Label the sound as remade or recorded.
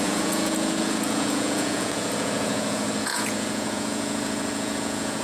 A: remade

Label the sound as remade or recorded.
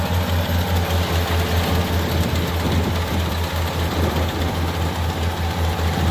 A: recorded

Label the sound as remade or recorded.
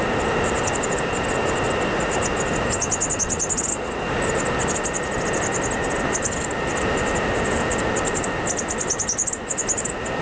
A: recorded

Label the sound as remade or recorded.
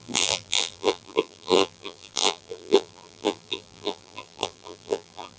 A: remade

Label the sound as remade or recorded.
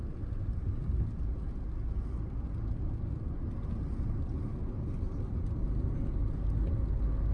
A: recorded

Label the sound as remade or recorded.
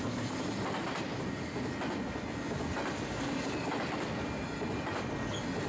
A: recorded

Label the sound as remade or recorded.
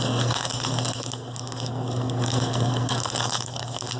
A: remade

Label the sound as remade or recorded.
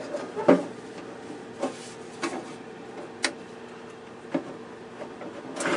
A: recorded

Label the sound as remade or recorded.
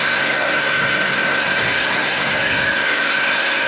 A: remade